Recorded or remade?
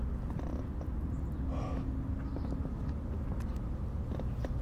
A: recorded